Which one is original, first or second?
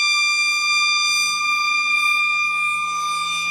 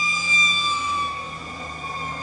first